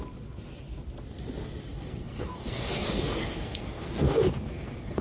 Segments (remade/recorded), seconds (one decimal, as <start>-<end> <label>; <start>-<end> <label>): 0.0-1.7 recorded; 1.7-5.0 remade